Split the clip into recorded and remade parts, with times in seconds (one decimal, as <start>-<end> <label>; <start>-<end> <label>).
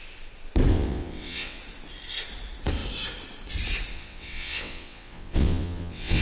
0.0-0.7 recorded; 0.7-1.6 remade; 1.6-3.9 recorded; 3.9-6.2 remade